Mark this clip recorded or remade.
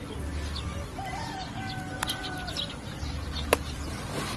recorded